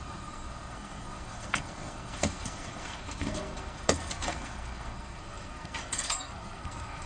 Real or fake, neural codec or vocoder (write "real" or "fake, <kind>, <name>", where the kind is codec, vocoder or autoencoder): fake, codec, SNAC